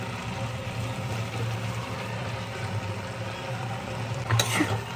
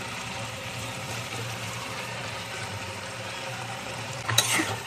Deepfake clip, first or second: second